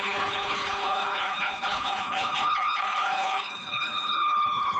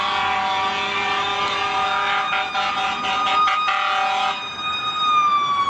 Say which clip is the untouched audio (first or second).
second